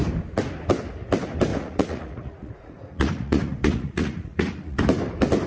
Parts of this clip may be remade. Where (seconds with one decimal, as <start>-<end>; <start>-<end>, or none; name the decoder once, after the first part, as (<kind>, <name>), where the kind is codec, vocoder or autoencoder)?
1.5-4.8 (vocoder, Vocos)